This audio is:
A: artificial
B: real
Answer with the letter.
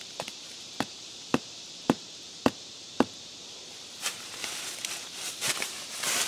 A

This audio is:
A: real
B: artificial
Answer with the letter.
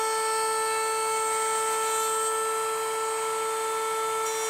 A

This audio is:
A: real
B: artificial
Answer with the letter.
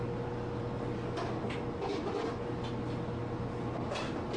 A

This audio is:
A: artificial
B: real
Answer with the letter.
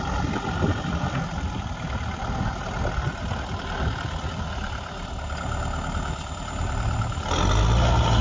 B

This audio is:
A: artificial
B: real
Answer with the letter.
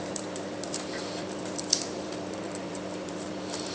A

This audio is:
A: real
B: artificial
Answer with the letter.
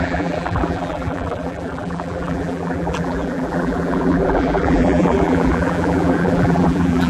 B